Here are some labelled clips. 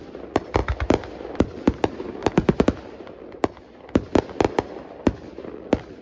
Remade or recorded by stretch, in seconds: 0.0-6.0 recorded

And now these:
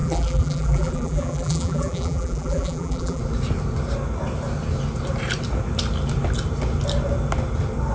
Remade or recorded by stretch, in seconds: 0.0-3.2 remade; 3.2-7.9 recorded

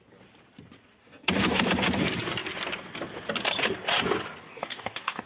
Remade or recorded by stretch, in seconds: 0.0-1.0 recorded; 1.0-1.7 remade; 1.7-4.4 recorded; 4.4-5.3 remade

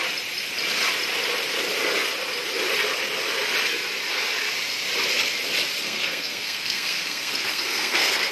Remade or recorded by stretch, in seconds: 0.0-5.8 recorded; 5.8-8.3 remade

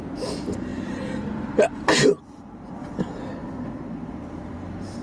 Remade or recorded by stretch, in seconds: 0.0-0.7 recorded; 0.7-2.7 remade; 2.7-5.0 recorded

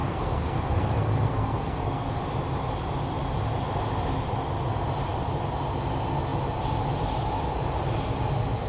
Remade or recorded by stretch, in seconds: 0.0-2.2 remade; 2.2-8.7 recorded

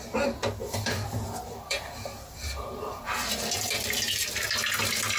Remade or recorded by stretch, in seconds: 0.0-0.6 recorded; 0.6-3.7 remade; 3.7-5.2 recorded

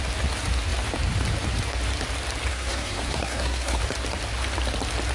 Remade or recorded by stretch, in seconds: 0.0-2.5 recorded; 2.5-3.8 remade; 3.8-5.1 recorded